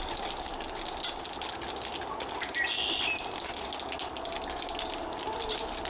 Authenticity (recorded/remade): recorded